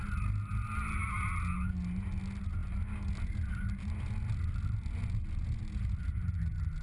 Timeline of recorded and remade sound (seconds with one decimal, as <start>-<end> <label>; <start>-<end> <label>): 0.0-6.8 recorded